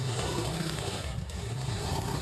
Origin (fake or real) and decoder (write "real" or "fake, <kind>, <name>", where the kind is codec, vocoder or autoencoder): fake, codec, SNAC